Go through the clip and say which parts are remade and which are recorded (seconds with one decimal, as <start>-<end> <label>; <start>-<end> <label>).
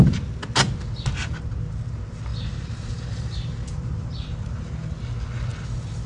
0.0-2.3 recorded; 2.3-4.6 remade; 4.6-6.1 recorded